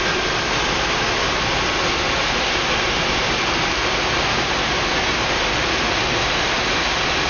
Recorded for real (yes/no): yes